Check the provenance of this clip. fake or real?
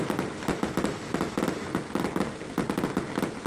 real